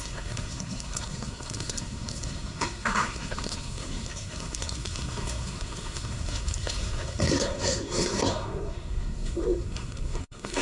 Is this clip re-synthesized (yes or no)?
yes